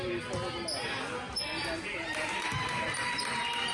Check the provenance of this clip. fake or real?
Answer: real